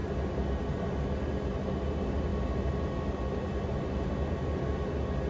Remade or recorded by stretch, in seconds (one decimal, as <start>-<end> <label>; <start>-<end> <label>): 0.0-5.3 recorded